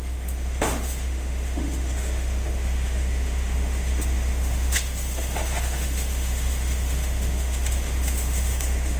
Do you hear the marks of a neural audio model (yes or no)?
yes